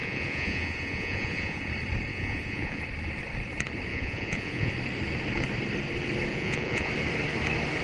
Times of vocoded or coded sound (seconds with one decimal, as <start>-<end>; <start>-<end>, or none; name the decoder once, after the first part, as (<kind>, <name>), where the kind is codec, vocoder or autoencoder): 0.0-1.7 (vocoder, Vocos); 2.1-2.8; 3.9-4.7; 6.3-6.9